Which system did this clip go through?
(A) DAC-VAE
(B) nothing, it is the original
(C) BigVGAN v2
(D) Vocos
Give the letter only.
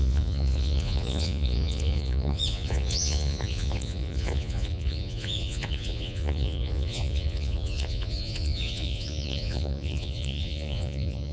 D